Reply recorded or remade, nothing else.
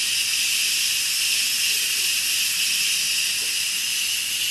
recorded